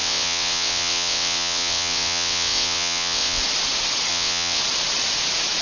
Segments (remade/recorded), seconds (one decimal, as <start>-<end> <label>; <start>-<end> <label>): 0.0-3.4 remade; 3.4-4.1 recorded; 4.1-4.6 remade; 4.6-5.6 recorded

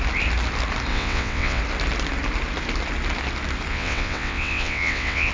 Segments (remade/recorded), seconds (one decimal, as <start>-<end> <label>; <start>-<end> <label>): 0.0-0.9 recorded; 0.9-1.6 remade; 1.6-3.7 recorded; 3.7-5.3 remade

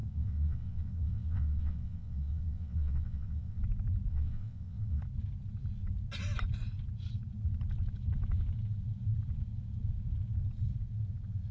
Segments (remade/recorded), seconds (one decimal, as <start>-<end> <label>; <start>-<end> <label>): 0.0-3.6 remade; 3.6-4.1 recorded; 4.1-5.0 remade; 5.0-11.5 recorded